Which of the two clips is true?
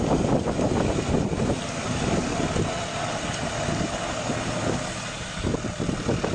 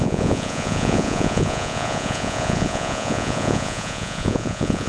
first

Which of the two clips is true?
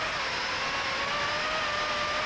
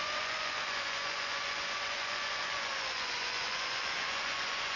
first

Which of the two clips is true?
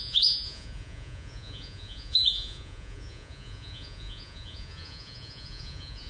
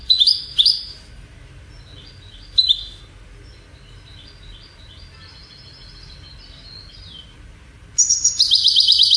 second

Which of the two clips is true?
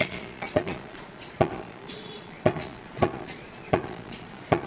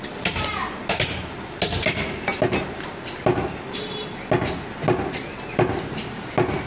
second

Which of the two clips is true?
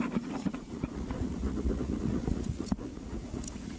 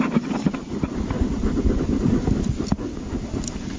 second